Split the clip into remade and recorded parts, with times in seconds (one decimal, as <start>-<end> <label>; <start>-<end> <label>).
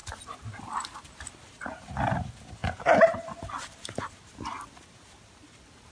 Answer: 0.0-2.6 recorded; 2.6-3.8 remade; 3.8-5.9 recorded